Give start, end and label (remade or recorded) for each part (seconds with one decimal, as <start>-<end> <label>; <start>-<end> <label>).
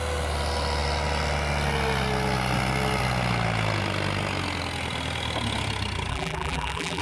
0.0-6.1 recorded; 6.1-7.0 remade